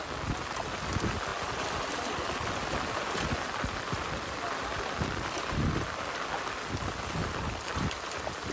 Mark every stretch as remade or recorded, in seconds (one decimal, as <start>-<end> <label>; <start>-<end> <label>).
0.0-1.3 recorded; 1.3-6.3 remade; 6.3-7.2 recorded; 7.2-8.5 remade